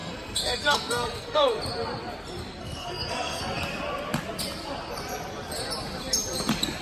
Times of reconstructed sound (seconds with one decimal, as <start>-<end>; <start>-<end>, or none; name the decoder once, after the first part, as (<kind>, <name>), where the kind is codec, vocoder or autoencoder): 0.0-1.6 (codec, SNAC); 2.6-3.4